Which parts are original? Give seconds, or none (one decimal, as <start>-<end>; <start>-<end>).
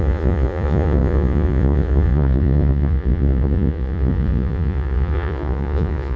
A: none